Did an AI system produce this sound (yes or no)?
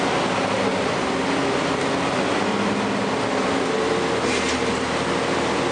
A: no